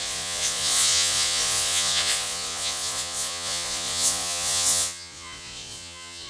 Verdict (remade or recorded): remade